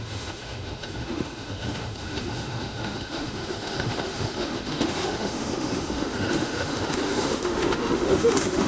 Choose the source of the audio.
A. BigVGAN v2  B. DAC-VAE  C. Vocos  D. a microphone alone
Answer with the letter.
B